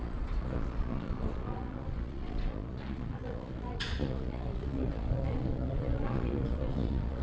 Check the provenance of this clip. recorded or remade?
remade